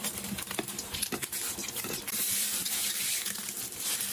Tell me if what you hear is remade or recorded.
remade